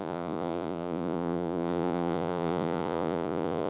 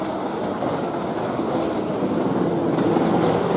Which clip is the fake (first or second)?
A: first